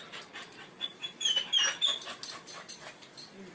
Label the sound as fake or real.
real